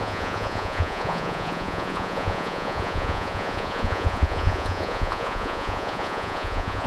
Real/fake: fake